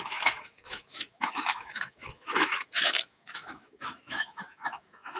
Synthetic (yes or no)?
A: yes